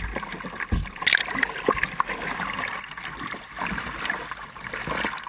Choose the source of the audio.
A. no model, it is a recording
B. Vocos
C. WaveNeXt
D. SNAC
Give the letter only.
A